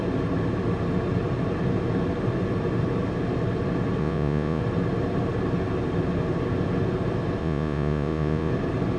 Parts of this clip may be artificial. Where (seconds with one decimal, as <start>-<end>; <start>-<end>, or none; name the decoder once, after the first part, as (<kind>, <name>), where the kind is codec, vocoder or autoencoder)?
4.0-4.6 (vocoder, Vocos); 7.4-8.5